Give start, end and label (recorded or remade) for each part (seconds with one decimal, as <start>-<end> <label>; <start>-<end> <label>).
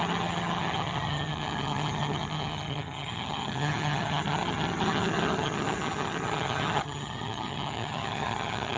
0.0-8.8 remade